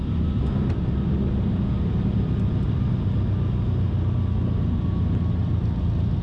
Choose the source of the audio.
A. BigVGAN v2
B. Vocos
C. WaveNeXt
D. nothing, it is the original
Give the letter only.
D